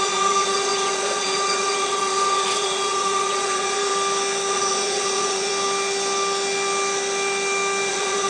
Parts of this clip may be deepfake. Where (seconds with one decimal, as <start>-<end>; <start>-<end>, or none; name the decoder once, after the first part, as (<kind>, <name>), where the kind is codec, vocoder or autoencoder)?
0.0-3.9 (vocoder, Vocos); 4.5-5.5; 7.9-8.3